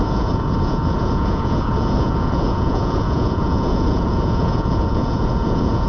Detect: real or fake fake